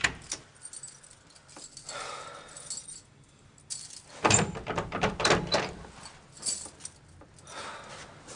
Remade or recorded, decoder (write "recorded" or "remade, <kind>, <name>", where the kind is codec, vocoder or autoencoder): recorded